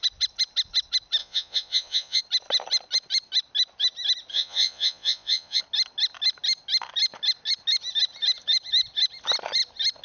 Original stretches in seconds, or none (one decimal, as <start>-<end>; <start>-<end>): 0.0-1.2; 2.2-4.3; 5.6-10.0